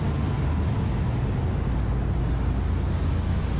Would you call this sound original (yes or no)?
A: yes